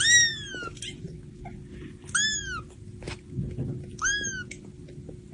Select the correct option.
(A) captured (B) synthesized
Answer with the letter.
A